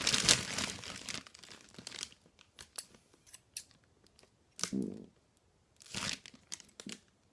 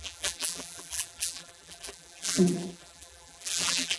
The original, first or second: first